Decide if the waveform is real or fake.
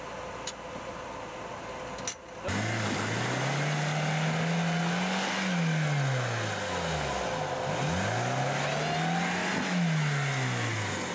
real